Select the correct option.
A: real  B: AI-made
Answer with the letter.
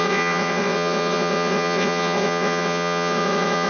B